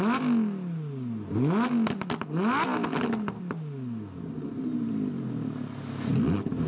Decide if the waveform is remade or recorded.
recorded